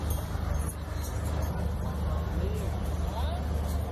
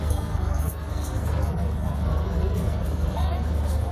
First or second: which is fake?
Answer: second